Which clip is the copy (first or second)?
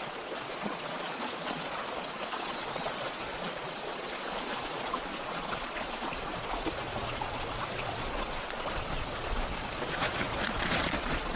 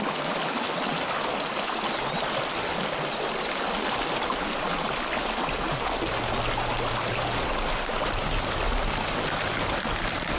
first